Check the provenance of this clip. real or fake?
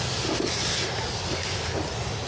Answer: real